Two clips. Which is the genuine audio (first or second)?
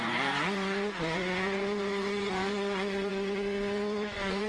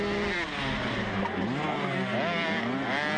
second